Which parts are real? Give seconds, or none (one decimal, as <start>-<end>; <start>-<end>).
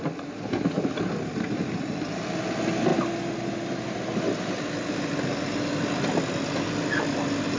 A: 0.0-7.6